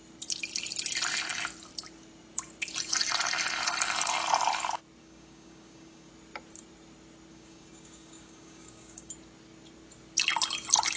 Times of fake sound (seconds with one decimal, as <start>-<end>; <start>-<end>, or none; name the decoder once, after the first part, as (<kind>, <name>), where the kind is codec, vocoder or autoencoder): 5.0-6.1 (codec, DAC); 7.3-9.1